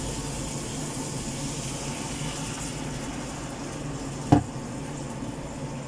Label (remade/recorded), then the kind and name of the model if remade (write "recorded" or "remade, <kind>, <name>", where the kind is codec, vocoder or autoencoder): recorded